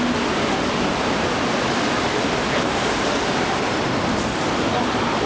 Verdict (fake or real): real